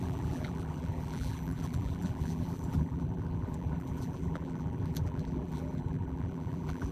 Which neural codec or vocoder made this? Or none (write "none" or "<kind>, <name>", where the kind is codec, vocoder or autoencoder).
vocoder, BigVGAN v2